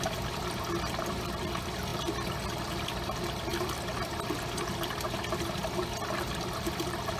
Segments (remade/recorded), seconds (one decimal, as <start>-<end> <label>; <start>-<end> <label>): 0.0-3.5 recorded; 3.5-4.1 remade; 4.1-7.2 recorded